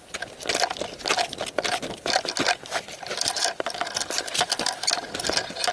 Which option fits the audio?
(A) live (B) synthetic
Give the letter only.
A